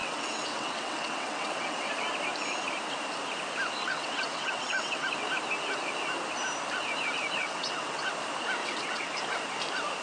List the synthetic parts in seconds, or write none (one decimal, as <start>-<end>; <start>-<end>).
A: 0.0-1.9; 3.8-5.1; 7.4-8.1; 8.6-9.1